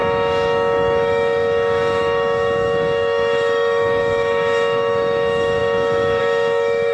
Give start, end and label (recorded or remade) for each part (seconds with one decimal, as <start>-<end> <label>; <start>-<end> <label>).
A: 0.0-6.9 remade